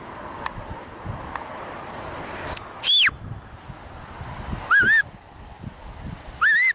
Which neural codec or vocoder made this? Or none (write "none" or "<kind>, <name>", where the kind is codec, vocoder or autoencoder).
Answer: none